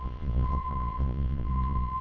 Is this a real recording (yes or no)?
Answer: no